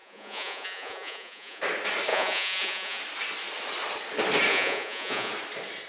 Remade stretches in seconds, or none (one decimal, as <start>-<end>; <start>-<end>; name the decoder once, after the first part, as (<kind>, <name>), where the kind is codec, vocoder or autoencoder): 0.0-1.6 (vocoder, Vocos); 2.1-3.0; 4.5-5.3